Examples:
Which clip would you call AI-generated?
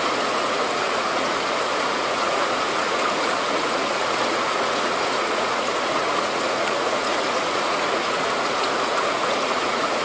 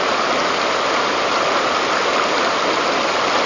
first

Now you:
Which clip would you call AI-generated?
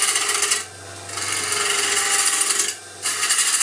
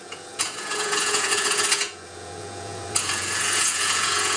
second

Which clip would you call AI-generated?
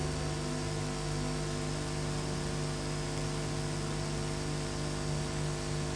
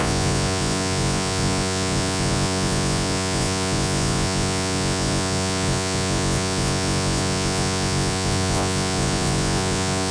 second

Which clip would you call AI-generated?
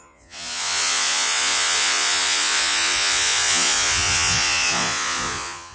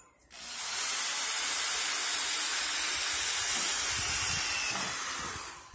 first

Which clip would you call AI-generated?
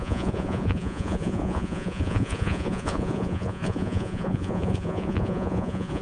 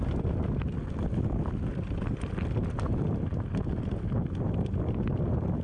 first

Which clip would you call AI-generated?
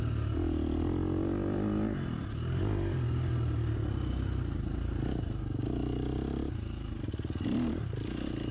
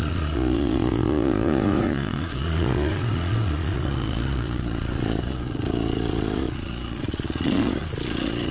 second